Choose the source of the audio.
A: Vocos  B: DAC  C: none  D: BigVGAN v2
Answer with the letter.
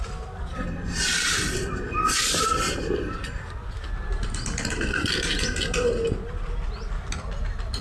C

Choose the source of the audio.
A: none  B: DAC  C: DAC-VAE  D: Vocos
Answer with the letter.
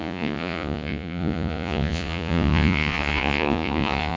D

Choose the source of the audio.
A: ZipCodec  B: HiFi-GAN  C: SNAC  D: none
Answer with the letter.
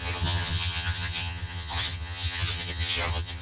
B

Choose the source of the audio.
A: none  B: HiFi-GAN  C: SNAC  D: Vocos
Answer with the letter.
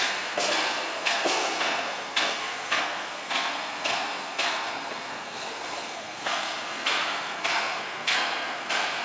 C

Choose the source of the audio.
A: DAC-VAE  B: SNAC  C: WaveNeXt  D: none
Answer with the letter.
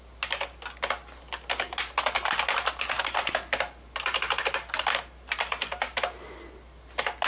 D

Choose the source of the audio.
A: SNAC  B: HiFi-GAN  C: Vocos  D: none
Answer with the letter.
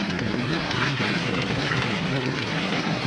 A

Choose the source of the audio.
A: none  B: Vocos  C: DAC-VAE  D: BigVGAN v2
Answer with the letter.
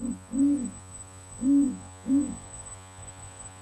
B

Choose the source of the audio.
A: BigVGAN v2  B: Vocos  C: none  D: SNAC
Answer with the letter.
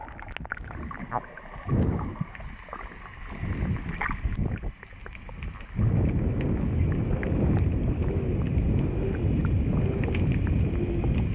C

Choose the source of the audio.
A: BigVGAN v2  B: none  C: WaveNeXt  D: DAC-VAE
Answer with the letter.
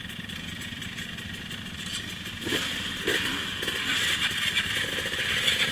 B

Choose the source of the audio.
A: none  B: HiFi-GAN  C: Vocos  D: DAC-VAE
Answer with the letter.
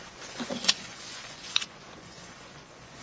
C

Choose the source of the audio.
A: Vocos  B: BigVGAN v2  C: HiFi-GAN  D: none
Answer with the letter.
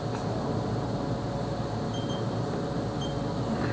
D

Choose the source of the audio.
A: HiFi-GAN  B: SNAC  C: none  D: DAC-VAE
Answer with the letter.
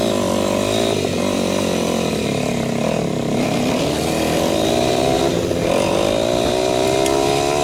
C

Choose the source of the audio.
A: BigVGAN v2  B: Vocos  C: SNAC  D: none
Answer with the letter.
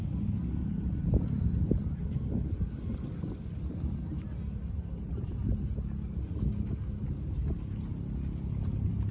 D